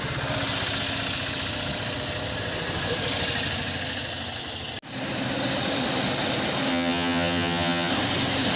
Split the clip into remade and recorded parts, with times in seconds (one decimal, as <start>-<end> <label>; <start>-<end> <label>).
0.0-6.7 recorded; 6.7-7.9 remade; 7.9-8.6 recorded